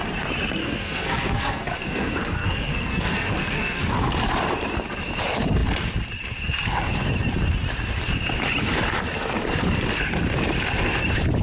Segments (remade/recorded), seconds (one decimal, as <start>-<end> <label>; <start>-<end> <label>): 0.0-0.6 recorded; 0.6-3.8 remade; 3.8-11.4 recorded